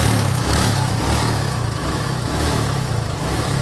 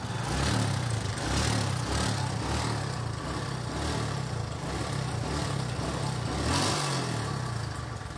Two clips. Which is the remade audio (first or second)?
first